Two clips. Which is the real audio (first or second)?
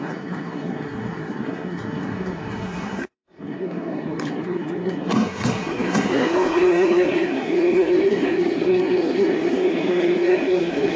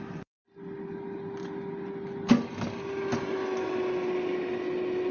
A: second